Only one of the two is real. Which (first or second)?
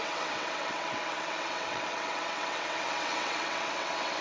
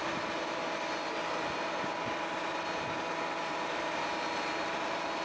second